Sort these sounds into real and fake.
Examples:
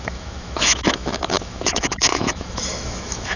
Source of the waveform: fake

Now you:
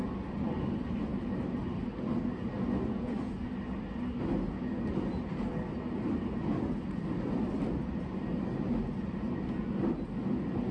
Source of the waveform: real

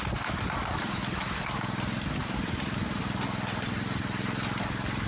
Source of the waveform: real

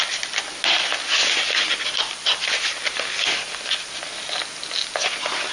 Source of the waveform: real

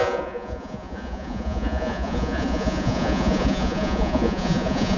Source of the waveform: fake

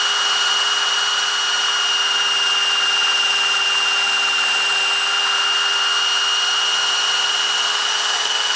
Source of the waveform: real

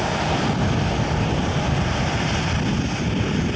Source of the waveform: real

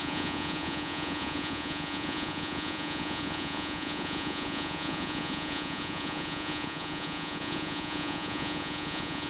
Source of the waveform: fake